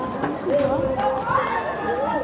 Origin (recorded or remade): recorded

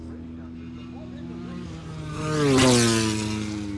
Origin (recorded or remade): recorded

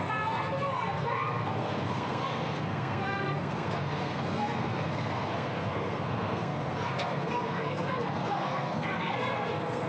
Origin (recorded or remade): remade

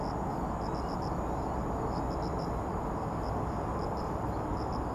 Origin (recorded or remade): recorded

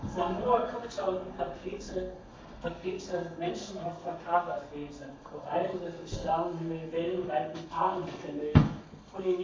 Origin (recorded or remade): remade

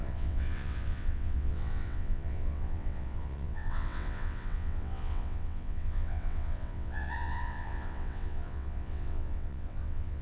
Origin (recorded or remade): remade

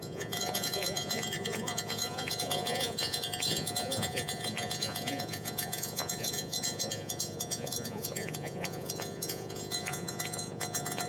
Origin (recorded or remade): remade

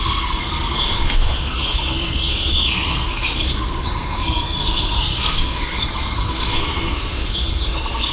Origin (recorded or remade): remade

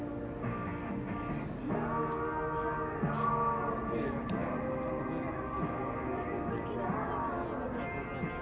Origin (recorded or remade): recorded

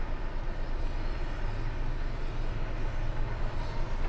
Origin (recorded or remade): recorded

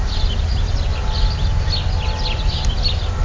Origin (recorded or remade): recorded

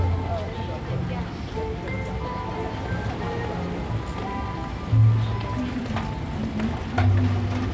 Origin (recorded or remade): recorded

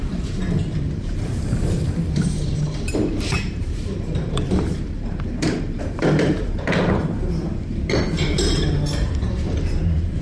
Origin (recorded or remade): remade